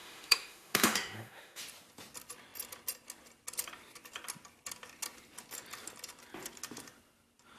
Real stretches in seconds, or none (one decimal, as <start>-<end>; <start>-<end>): 1.6-7.6